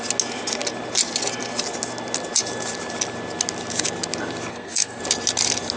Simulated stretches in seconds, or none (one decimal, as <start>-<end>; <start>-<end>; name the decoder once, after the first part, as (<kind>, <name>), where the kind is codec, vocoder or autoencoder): 4.5-5.0 (codec, SNAC)